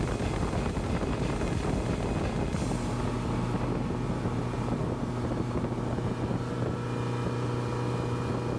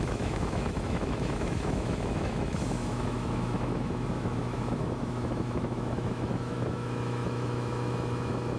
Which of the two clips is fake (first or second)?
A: second